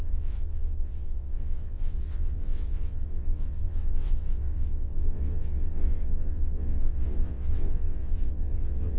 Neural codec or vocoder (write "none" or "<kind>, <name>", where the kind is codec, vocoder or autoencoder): vocoder, WaveNeXt